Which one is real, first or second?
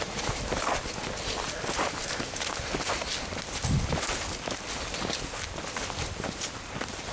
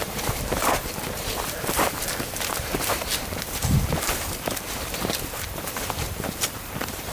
first